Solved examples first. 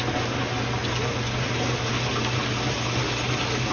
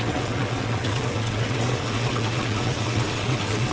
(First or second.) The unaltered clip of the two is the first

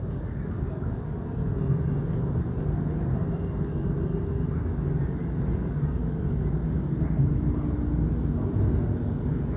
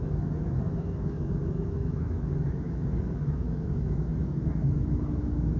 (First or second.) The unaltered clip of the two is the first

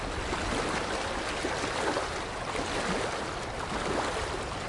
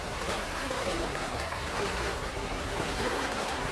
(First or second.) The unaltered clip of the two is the first